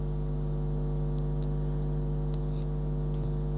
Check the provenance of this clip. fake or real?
real